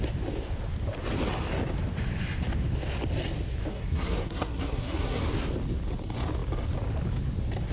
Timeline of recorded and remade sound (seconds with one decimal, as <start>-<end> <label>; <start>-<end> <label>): 0.0-3.7 recorded; 3.7-5.2 remade; 5.2-7.7 recorded